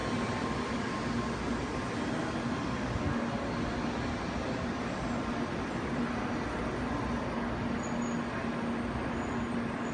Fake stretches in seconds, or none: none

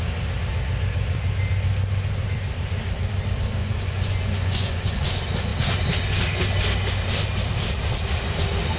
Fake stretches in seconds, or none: 3.6-5.1 (vocoder, Vocos)

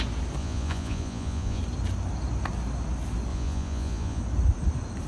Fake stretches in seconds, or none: 0.4-1.6 (vocoder, Vocos); 3.3-4.2

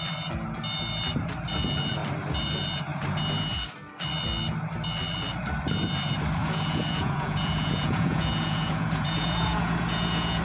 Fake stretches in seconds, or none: 6.4-10.4 (vocoder, Vocos)

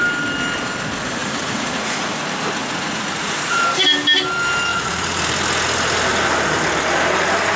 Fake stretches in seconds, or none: 1.2-2.0 (vocoder, Vocos); 2.6-3.6; 4.7-5.2